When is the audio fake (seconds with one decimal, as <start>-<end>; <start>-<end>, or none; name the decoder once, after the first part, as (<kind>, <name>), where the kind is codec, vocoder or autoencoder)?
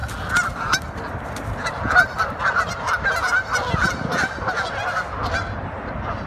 none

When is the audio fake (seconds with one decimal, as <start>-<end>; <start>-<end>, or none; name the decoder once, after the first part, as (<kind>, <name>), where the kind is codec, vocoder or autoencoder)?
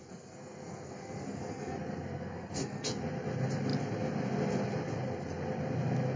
0.0-3.0 (codec, SNAC)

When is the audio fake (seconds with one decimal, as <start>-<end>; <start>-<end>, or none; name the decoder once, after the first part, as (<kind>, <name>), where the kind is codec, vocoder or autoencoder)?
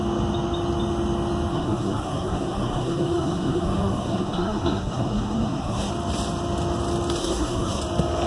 1.5-5.9 (codec, SNAC); 7.2-7.8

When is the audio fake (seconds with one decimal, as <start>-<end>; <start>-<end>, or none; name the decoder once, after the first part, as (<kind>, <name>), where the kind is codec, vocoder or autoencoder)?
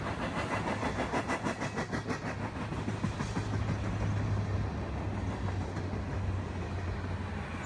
none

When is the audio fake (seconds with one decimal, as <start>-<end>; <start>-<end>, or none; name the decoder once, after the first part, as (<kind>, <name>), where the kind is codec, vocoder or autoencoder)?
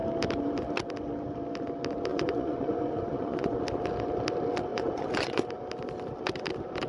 2.1-3.6 (vocoder, Vocos); 4.7-5.4